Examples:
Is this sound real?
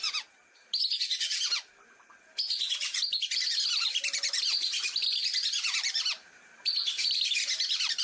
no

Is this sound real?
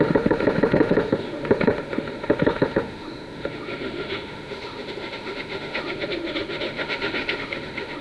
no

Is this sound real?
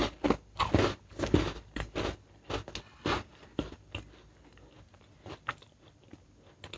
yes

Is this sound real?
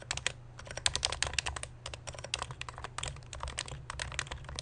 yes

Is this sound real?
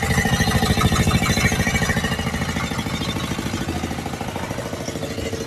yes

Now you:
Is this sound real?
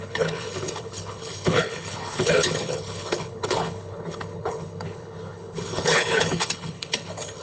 no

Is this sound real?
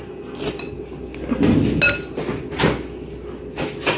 yes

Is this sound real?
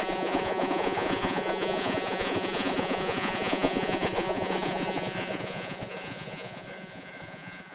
no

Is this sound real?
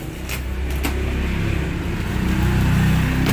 yes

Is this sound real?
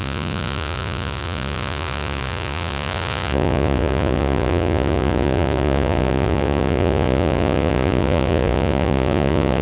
no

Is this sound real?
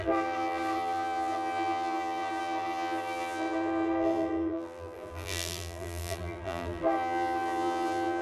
no